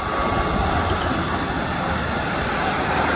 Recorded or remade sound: recorded